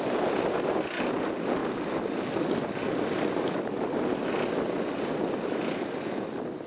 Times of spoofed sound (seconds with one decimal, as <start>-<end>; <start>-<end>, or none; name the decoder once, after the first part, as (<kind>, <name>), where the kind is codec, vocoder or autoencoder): none